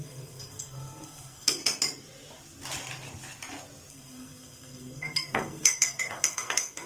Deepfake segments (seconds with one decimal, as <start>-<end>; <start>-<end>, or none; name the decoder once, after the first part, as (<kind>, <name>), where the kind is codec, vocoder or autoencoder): 0.0-1.6 (codec, SNAC); 3.9-6.9